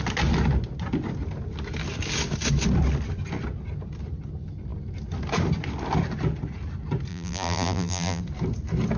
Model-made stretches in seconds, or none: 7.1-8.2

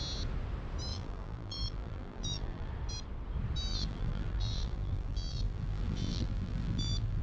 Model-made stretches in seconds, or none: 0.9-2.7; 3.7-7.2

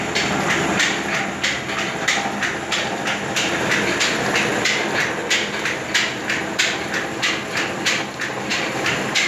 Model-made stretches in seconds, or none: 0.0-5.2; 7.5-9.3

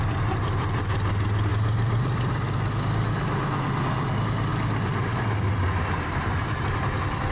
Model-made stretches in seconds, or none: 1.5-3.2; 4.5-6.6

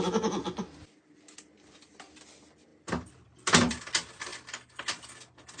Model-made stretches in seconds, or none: 2.7-3.8; 4.3-4.8

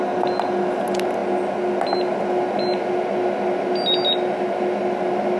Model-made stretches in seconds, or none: none

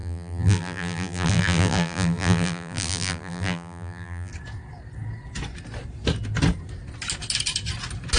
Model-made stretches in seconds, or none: 0.0-4.3